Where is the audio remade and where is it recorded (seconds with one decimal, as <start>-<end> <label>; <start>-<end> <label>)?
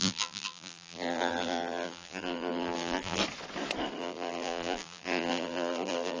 0.0-3.2 remade; 3.2-4.0 recorded; 4.0-6.2 remade